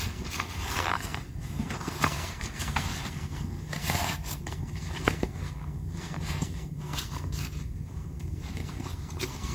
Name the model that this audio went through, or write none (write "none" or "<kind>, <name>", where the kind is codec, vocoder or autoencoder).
codec, SNAC